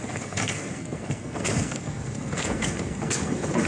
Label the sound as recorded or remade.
remade